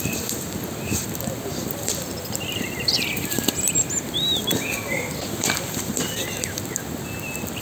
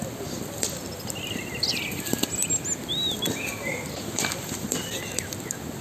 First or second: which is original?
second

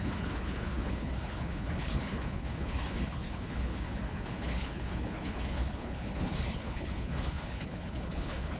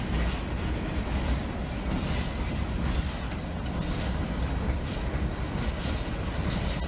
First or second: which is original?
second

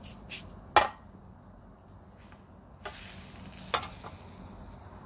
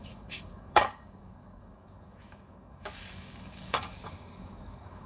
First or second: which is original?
first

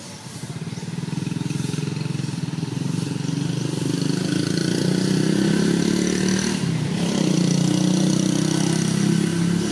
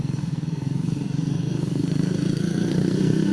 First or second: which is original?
first